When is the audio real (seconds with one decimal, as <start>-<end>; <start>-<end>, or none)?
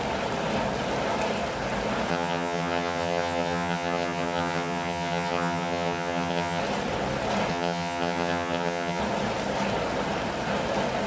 0.0-2.1; 6.6-7.5; 9.0-11.1